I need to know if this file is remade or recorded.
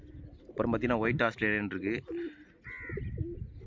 recorded